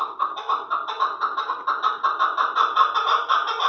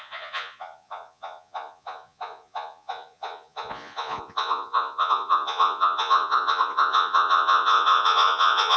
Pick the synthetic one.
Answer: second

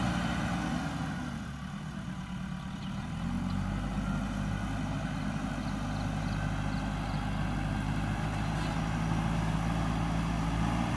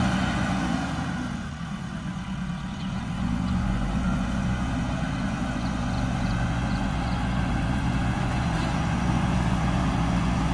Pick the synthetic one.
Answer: second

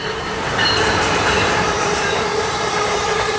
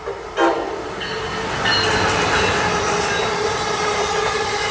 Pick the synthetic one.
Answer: first